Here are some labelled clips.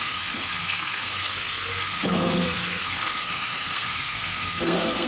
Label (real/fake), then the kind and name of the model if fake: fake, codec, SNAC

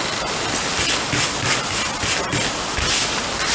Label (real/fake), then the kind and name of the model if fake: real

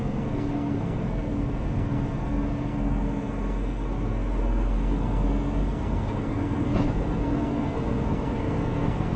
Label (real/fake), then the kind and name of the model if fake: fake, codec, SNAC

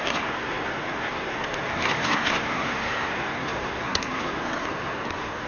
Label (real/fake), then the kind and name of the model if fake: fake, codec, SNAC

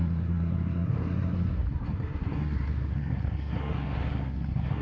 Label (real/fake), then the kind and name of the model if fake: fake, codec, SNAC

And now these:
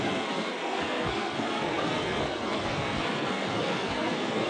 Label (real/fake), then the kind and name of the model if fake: fake, codec, SNAC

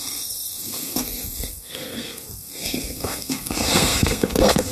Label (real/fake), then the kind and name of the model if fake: fake, codec, SNAC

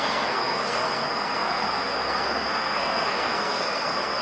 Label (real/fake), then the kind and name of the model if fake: fake, codec, SNAC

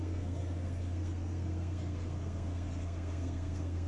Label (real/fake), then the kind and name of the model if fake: fake, codec, SNAC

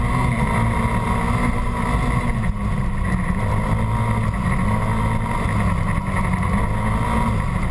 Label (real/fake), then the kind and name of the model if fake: real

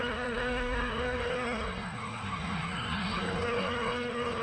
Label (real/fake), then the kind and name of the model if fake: fake, codec, SNAC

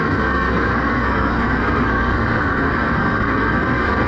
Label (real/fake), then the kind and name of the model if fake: fake, codec, SNAC